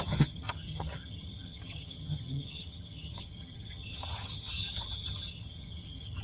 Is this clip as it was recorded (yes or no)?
no